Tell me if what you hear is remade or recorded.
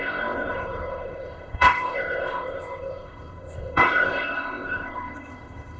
remade